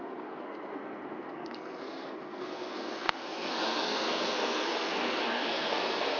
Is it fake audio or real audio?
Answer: fake